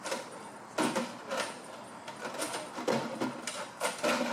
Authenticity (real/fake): real